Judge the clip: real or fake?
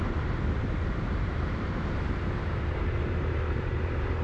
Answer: fake